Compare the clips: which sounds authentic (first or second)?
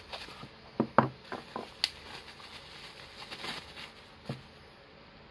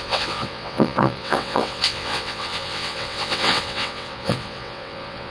first